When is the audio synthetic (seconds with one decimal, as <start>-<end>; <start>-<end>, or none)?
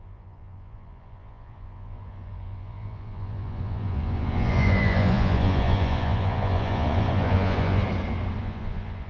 0.0-7.8; 8.4-9.1